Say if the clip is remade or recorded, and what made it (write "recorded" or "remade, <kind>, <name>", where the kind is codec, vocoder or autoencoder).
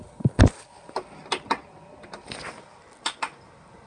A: recorded